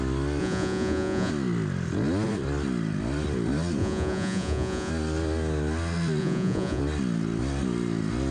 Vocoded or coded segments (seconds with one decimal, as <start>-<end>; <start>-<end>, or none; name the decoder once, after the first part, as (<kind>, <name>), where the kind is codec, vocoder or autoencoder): 0.4-1.3 (vocoder, Vocos); 3.8-4.9; 6.2-6.8